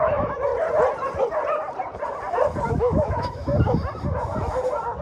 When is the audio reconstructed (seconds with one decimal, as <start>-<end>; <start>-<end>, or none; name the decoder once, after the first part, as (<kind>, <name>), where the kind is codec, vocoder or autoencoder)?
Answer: 0.0-0.5 (autoencoder, DAC-VAE); 2.7-3.5